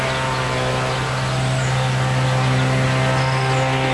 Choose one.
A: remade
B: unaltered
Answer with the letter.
B